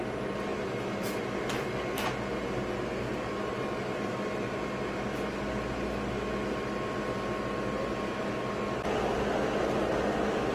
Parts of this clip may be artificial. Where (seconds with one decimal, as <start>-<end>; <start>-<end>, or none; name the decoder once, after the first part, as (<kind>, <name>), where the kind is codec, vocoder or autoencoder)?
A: 0.5-1.2 (vocoder, BigVGAN v2)